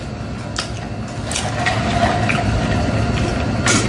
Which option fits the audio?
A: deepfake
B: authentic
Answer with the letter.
B